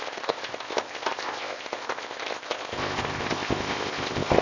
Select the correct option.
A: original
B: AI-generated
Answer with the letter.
B